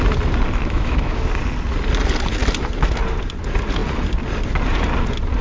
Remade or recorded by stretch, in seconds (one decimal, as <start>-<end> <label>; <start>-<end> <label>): 0.0-0.6 recorded; 0.6-1.3 remade; 1.3-5.4 recorded